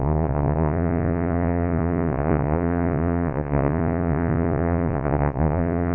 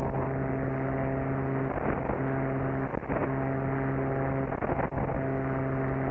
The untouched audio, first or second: second